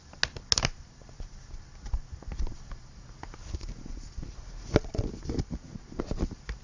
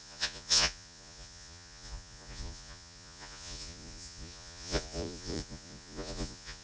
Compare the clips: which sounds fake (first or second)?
second